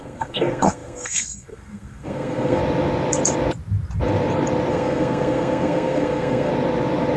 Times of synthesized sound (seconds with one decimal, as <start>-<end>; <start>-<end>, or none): 0.0-2.6; 4.7-6.5

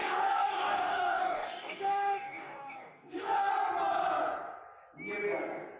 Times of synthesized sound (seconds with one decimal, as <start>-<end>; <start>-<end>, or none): 0.0-3.5

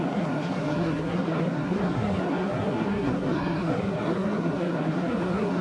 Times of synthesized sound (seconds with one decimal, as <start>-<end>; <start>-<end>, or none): 0.0-5.6